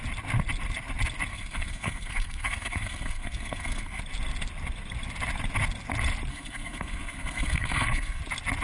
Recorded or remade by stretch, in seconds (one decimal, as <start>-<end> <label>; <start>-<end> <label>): 0.0-1.3 recorded; 1.3-4.0 remade; 4.0-6.3 recorded; 6.3-8.2 remade; 8.2-8.6 recorded